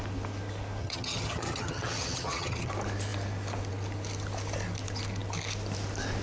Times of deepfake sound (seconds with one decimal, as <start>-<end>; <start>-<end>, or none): 0.8-2.7